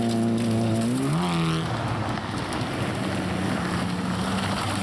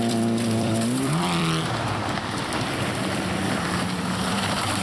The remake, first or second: second